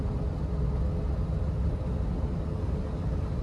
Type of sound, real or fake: real